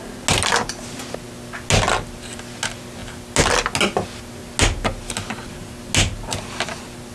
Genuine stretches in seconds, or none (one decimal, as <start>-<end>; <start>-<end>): 0.0-7.1